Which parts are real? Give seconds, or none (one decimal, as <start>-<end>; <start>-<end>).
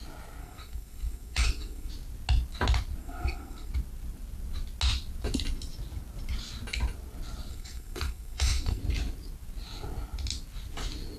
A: 0.0-0.4; 1.9-3.0; 3.7-7.5; 8.8-11.2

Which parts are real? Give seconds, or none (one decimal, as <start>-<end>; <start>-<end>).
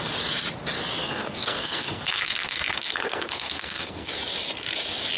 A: 0.0-1.0; 4.1-5.2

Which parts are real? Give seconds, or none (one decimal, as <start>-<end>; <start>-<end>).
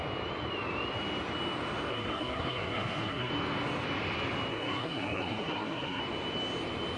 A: 0.0-1.9; 3.3-4.5; 6.0-7.0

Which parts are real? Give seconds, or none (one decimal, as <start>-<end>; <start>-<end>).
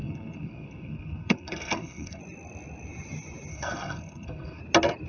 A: 2.2-3.5; 4.6-5.1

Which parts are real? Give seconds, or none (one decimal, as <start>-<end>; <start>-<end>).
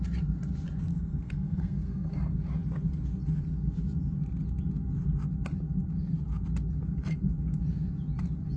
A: 0.0-0.9; 2.1-8.6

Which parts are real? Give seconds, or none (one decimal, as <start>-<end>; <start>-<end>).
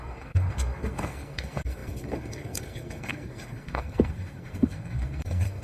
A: none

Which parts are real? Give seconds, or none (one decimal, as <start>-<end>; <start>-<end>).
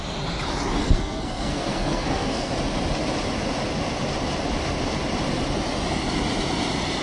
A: 0.0-0.8; 2.5-7.0